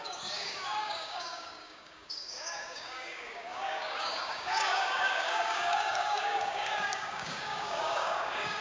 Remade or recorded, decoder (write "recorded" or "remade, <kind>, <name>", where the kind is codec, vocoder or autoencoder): remade, codec, DAC